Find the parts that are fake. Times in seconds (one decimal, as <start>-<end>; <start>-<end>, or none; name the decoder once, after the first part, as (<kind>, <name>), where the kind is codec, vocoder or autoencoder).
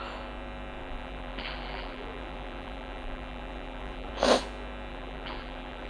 0.8-4.1 (vocoder, BigVGAN v2); 4.9-5.9